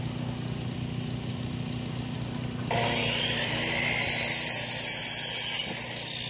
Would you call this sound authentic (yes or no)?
yes